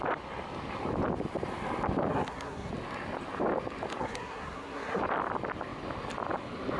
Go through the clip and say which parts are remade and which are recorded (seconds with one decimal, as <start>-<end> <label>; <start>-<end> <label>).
0.0-2.1 recorded; 2.1-2.7 remade; 2.7-4.0 recorded; 4.0-5.0 remade; 5.0-6.8 recorded